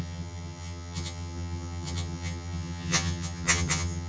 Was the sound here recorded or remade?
remade